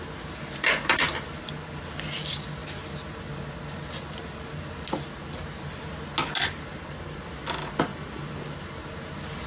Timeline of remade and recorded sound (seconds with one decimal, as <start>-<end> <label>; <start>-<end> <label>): 0.0-9.5 recorded